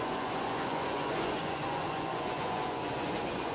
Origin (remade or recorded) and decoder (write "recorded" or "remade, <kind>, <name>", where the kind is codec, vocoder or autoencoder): remade, vocoder, Vocos